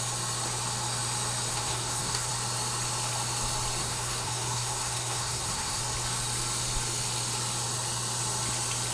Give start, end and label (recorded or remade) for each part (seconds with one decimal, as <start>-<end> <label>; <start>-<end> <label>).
0.0-1.5 recorded; 1.5-2.3 remade; 2.3-3.8 recorded; 3.8-5.8 remade; 5.8-8.9 recorded